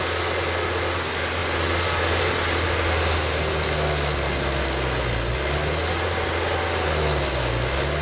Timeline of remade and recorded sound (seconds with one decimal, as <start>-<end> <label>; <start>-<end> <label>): 0.0-8.0 recorded